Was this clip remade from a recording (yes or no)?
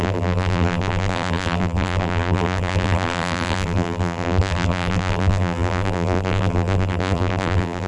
yes